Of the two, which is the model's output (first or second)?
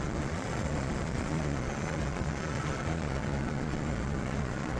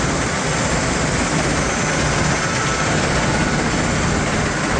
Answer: first